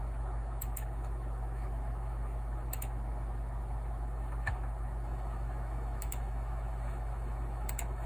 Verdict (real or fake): fake